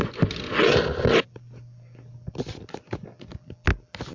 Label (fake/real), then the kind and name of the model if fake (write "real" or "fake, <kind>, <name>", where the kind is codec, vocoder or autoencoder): real